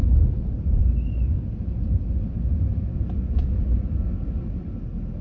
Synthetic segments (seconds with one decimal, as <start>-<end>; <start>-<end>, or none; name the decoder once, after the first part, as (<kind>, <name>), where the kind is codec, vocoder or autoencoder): none